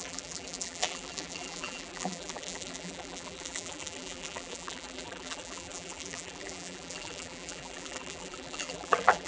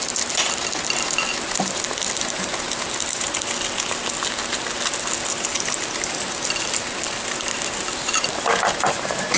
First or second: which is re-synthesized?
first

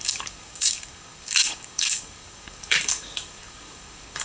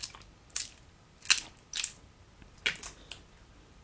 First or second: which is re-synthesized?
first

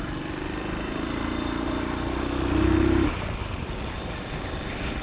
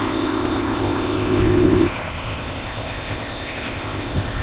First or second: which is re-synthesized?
second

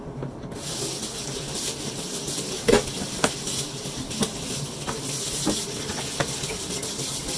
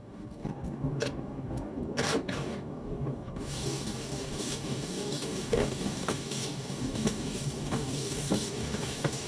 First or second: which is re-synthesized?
second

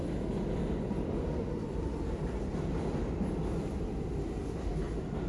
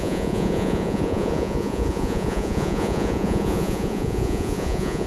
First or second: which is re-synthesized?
second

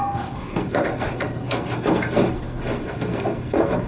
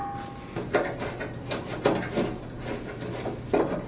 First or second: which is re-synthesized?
first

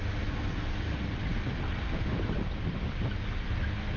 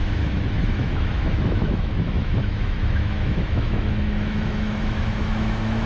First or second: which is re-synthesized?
second